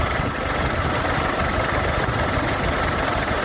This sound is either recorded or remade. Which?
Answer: recorded